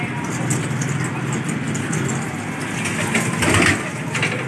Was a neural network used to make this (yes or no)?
no